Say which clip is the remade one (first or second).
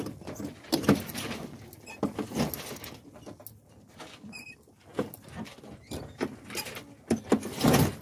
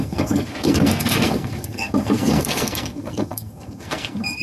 second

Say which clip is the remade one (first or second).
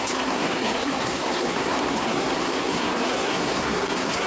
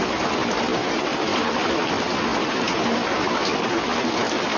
first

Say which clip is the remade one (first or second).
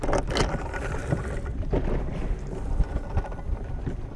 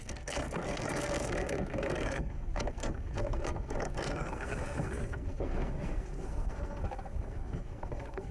second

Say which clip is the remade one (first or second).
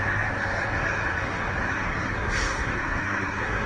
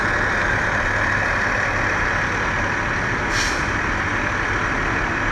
first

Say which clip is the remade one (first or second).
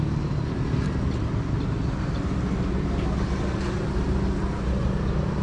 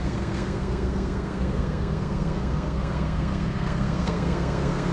second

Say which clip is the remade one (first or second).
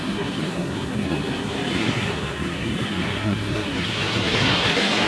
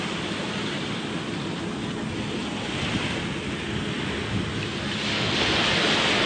first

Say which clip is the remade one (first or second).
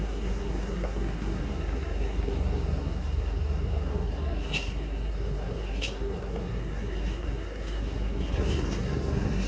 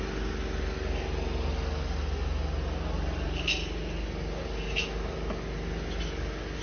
first